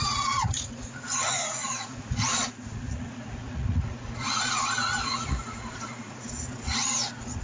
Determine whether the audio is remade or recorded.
remade